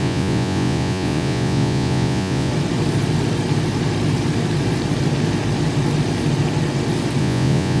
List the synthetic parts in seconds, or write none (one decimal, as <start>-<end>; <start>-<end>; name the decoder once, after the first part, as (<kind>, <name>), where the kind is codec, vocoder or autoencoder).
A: 0.0-2.5 (vocoder, Vocos); 7.2-7.8